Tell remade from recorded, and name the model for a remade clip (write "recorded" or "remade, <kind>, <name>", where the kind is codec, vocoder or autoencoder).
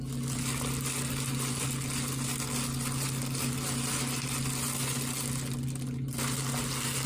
recorded